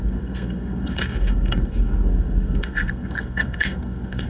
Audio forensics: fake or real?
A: fake